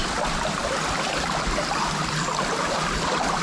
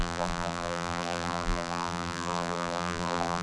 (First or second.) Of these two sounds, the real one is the first